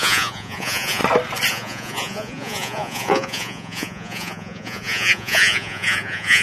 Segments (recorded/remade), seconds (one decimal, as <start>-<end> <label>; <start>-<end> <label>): 0.0-1.0 remade; 1.0-1.5 recorded; 1.5-6.4 remade